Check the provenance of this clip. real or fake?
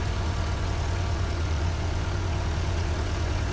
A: fake